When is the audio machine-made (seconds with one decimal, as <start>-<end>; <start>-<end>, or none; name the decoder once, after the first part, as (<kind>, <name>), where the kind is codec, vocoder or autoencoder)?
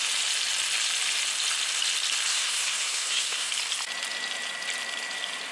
2.3-3.5 (codec, SNAC)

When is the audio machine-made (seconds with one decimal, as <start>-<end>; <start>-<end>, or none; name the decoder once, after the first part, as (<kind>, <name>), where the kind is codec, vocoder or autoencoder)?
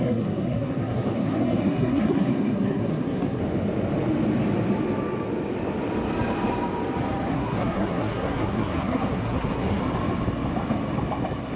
0.0-3.4 (codec, SNAC); 7.3-9.8